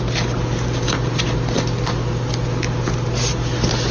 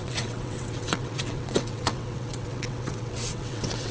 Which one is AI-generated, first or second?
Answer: second